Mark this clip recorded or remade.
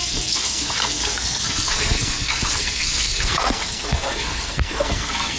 remade